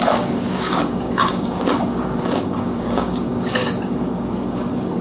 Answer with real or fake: fake